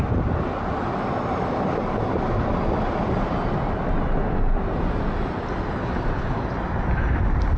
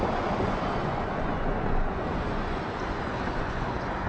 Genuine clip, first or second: first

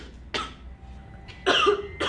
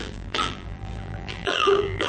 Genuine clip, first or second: first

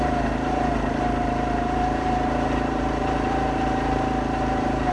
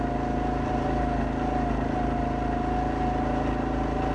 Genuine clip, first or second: second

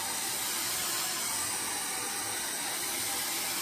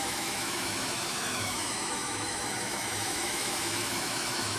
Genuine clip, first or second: first